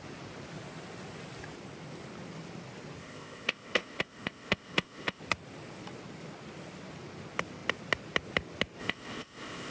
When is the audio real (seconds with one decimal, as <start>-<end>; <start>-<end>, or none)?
0.0-3.0; 5.2-8.8